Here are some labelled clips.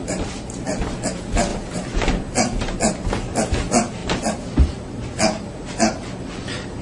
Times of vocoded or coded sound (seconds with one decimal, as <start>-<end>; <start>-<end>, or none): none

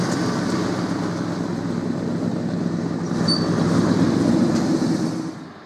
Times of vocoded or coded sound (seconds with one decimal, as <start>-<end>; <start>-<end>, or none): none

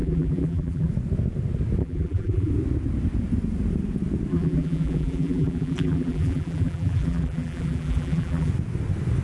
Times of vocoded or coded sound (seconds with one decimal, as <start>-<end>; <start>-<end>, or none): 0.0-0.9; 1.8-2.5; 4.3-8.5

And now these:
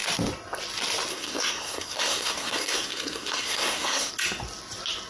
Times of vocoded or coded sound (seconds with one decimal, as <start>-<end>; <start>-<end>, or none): 1.1-4.1

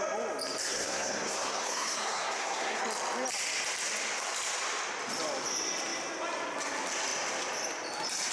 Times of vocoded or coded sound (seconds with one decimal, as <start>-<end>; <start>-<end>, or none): 0.6-2.8

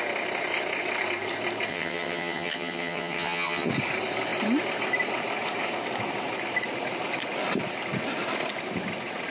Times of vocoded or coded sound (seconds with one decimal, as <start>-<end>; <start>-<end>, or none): 1.7-3.7

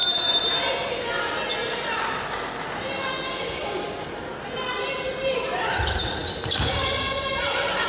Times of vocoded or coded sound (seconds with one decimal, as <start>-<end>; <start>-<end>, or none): none